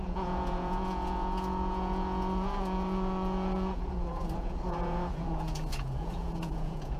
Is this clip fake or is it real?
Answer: fake